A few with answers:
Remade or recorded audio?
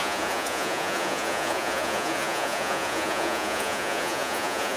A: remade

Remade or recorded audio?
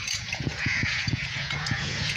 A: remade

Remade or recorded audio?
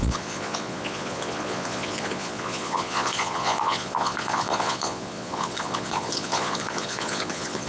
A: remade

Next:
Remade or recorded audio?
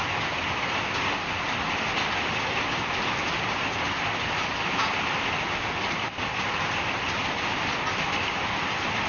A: recorded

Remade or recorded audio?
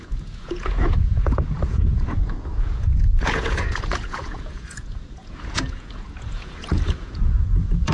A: remade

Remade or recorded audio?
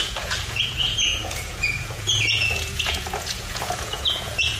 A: remade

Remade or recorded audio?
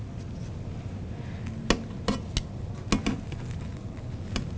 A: recorded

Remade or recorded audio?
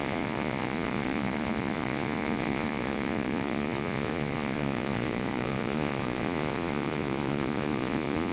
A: remade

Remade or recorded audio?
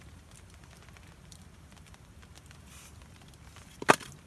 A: recorded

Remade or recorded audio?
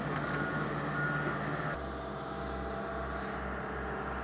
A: recorded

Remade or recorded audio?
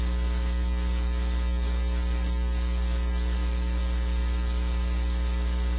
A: recorded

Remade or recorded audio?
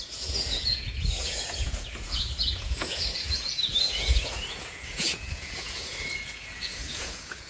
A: remade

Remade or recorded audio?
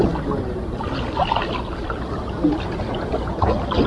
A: recorded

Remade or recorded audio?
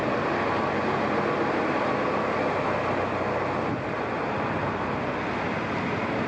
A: recorded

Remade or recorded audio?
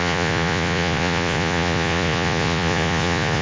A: remade